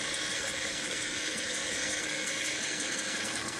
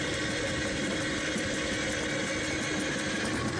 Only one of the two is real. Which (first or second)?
second